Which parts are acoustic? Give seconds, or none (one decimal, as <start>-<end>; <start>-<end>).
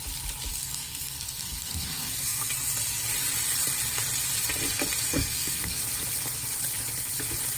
0.0-0.5; 2.5-5.1; 5.8-7.6